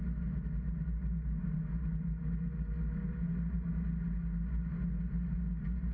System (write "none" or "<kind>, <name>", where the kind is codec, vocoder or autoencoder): none